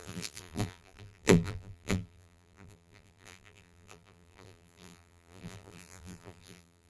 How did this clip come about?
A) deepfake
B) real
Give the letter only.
A